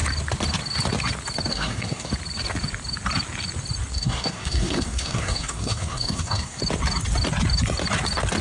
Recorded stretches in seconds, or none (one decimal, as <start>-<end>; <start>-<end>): 0.0-1.5; 2.1-3.9; 6.6-8.4